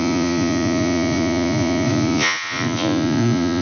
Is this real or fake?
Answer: fake